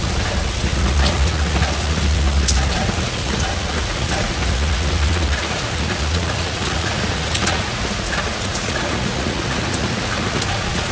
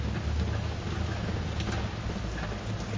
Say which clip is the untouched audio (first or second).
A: second